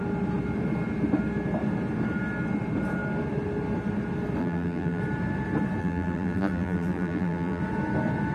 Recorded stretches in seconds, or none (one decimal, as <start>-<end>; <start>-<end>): 0.0-4.4; 5.0-5.8; 7.6-8.3